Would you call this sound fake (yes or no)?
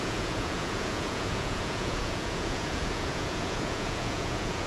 yes